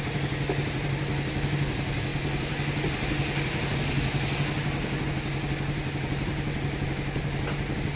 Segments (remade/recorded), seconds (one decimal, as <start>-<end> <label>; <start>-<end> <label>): 0.0-8.0 recorded